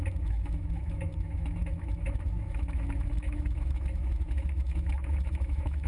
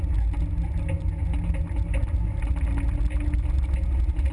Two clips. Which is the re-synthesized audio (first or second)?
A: first